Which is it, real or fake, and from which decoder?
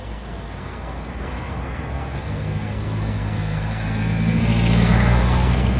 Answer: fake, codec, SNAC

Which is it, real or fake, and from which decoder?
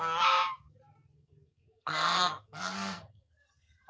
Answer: fake, codec, SNAC